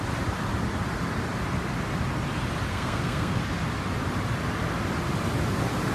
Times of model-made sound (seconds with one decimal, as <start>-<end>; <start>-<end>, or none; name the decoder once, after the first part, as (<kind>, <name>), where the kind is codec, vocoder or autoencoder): 2.7-3.4 (codec, SNAC)